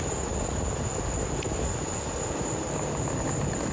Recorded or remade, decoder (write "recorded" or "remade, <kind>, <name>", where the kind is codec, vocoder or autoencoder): recorded